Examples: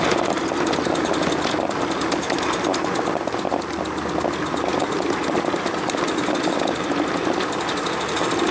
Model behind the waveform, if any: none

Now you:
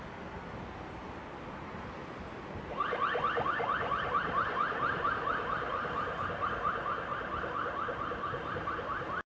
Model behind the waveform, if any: none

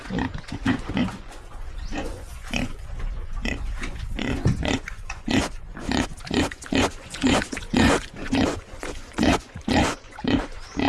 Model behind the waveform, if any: vocoder, Vocos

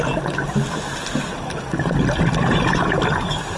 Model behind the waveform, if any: none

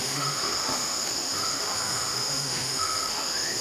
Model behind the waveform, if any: autoencoder, DAC-VAE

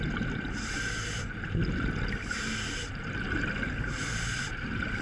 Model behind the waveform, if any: none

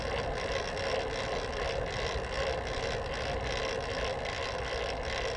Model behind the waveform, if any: none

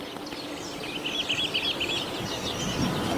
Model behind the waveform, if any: none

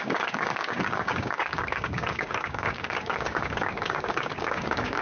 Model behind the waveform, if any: codec, DAC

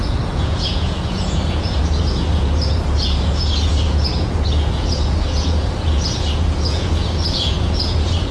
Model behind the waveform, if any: vocoder, Vocos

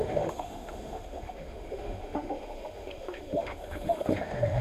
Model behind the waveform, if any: autoencoder, DAC-VAE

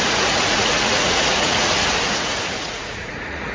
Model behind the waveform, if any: vocoder, Vocos